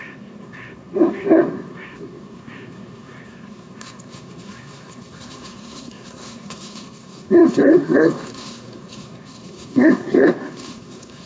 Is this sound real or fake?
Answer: fake